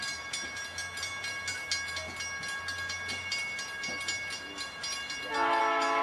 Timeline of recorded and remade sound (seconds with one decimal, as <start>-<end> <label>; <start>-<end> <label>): 0.0-6.0 recorded